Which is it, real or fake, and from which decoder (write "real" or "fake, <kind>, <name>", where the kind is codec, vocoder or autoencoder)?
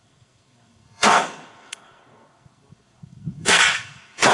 fake, codec, SNAC